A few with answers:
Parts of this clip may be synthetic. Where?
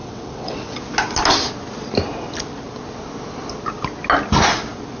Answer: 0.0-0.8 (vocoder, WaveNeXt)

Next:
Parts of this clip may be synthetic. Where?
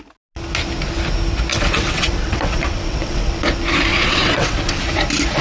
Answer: 1.5-3.4 (vocoder, WaveNeXt); 3.9-4.8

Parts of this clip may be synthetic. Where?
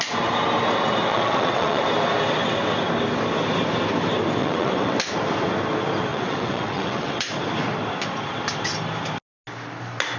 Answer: 1.1-1.8 (vocoder, WaveNeXt); 4.4-5.0; 6.1-7.3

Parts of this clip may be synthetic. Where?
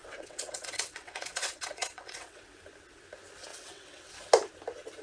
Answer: 0.0-2.4 (vocoder, WaveNeXt); 3.5-4.1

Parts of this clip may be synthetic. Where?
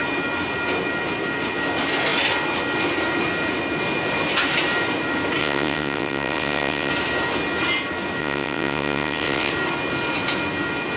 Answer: 5.4-6.9 (vocoder, WaveNeXt); 8.2-9.5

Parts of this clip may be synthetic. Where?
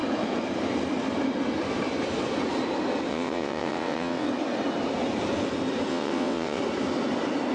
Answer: 3.1-4.3 (vocoder, WaveNeXt); 5.9-6.6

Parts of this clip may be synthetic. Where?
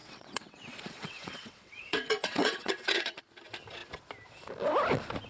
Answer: 0.0-3.2 (vocoder, WaveNeXt)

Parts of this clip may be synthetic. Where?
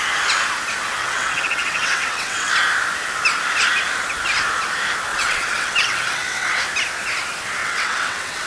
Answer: 1.0-2.5 (vocoder, WaveNeXt); 5.1-6.6; 7.6-8.5